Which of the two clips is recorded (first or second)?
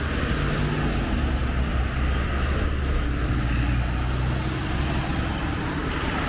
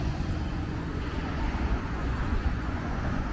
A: first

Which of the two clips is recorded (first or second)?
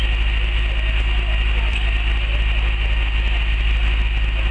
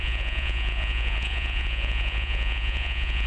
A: first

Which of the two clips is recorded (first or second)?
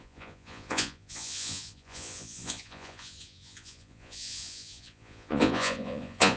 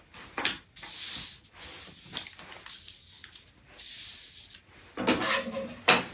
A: second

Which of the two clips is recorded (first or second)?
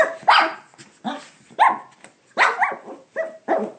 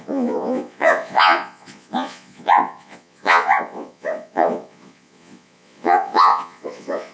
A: first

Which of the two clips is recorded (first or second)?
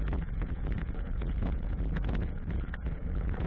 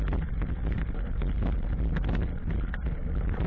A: second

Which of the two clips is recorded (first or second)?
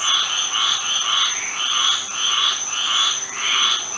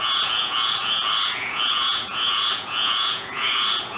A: first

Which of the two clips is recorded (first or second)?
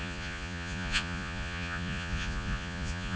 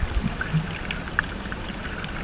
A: second